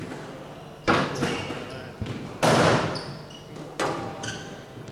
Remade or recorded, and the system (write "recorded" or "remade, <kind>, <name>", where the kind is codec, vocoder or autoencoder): recorded